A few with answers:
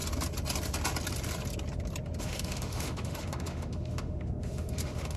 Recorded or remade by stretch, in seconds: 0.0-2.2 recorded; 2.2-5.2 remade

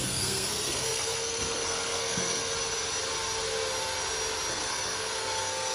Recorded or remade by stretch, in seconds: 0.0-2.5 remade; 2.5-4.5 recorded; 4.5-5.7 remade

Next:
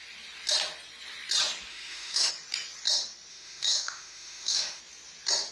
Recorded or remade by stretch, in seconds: 0.0-1.7 recorded; 1.7-2.3 remade; 2.3-3.3 recorded; 3.3-4.8 remade; 4.8-5.5 recorded

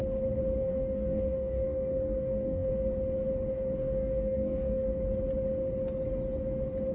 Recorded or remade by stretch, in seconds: 0.0-0.6 recorded; 0.6-2.7 remade; 2.7-3.5 recorded; 3.5-4.9 remade; 4.9-6.9 recorded